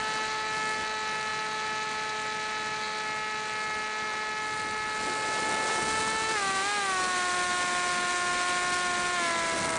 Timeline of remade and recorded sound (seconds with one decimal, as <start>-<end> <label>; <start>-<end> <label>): 0.0-9.8 recorded